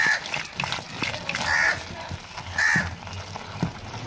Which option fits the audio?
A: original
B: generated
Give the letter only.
A